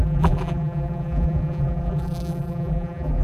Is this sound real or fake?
fake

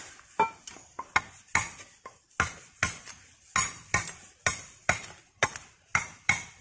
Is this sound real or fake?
real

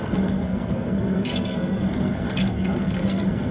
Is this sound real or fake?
fake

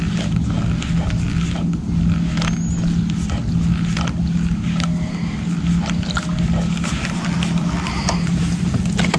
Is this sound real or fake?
real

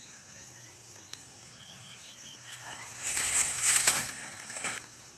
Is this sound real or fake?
fake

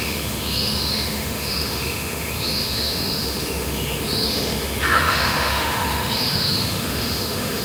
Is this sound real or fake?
fake